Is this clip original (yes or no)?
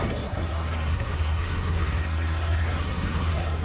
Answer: no